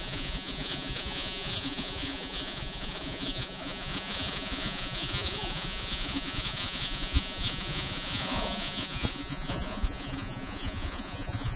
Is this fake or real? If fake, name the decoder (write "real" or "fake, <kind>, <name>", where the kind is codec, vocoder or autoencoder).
fake, vocoder, Vocos